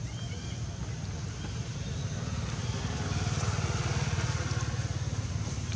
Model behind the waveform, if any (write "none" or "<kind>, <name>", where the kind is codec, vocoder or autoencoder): none